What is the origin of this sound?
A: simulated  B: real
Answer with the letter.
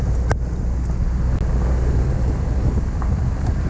B